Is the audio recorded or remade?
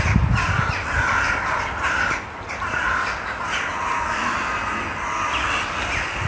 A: recorded